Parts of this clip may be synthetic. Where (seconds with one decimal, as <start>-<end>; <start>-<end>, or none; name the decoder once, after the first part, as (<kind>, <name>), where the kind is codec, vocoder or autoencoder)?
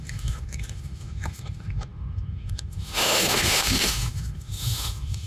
0.0-5.3 (autoencoder, DAC-VAE)